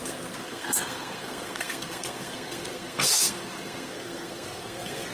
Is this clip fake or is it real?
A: fake